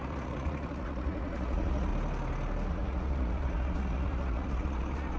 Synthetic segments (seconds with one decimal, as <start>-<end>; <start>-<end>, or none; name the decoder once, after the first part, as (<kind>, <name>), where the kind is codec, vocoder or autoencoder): 0.0-1.9 (vocoder, Vocos); 2.7-5.2